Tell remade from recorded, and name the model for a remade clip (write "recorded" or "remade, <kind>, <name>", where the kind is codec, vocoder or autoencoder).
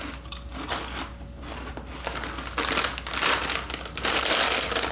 recorded